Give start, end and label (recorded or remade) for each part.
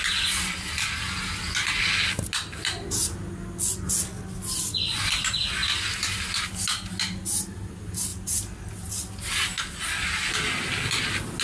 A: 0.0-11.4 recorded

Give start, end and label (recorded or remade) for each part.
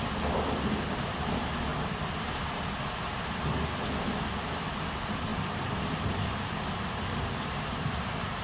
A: 0.0-5.3 recorded; 5.3-8.4 remade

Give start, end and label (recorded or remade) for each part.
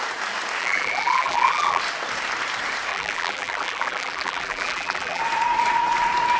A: 0.0-0.6 recorded; 0.6-1.8 remade; 1.8-2.9 recorded; 2.9-5.2 remade; 5.2-6.4 recorded